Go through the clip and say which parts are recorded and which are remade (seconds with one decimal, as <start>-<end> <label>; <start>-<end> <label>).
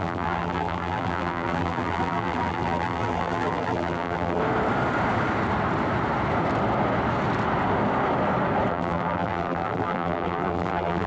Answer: 0.0-4.4 remade; 4.4-8.7 recorded; 8.7-11.1 remade